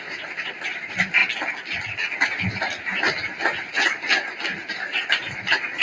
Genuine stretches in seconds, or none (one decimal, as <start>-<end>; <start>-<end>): 1.2-4.7